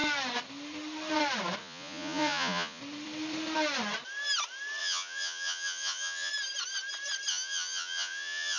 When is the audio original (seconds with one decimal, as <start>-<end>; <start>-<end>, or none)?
0.0-1.6; 2.8-4.8; 6.3-7.3